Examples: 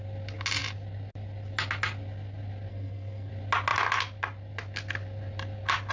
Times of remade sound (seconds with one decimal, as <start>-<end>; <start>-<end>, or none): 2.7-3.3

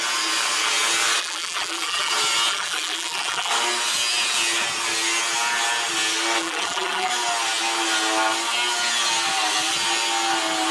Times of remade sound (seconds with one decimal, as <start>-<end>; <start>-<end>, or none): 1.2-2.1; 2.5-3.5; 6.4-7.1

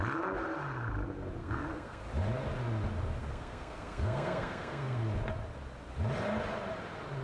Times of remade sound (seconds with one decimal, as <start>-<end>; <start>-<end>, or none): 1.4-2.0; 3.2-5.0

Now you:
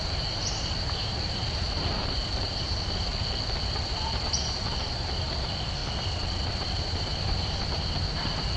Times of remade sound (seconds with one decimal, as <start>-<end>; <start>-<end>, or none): 0.0-3.1; 3.6-5.8; 6.5-8.6